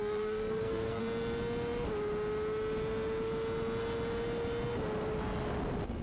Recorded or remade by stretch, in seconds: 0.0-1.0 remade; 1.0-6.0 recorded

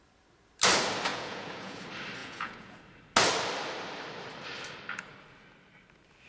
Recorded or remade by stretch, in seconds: 0.0-1.1 recorded; 1.1-1.8 remade; 1.8-2.2 recorded; 2.2-2.8 remade; 2.8-6.3 recorded

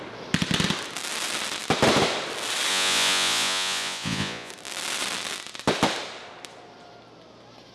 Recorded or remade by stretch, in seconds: 0.0-2.7 recorded; 2.7-4.5 remade; 4.5-7.7 recorded

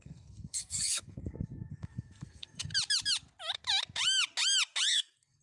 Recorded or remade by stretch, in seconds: 0.0-2.7 remade; 2.7-4.9 recorded; 4.9-5.4 remade

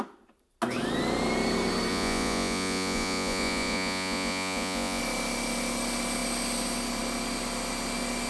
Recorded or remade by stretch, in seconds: 0.0-1.9 recorded; 1.9-5.0 remade; 5.0-8.3 recorded

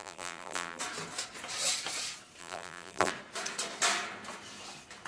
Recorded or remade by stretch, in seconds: 0.0-0.8 remade; 0.8-2.4 recorded; 2.4-3.1 remade; 3.1-5.1 recorded

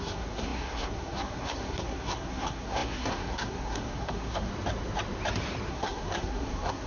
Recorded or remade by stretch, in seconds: 0.0-4.5 remade; 4.5-5.7 recorded; 5.7-6.9 remade